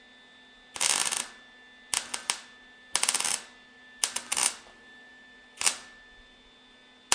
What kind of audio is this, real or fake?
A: real